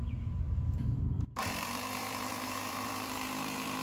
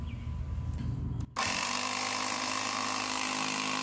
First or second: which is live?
second